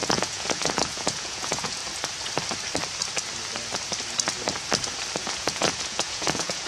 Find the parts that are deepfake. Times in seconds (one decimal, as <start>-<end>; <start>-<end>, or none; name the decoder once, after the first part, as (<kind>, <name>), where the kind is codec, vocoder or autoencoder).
0.0-1.8 (vocoder, Vocos); 5.2-6.7